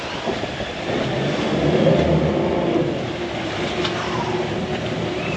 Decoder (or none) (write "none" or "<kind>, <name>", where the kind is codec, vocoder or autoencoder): vocoder, BigVGAN v2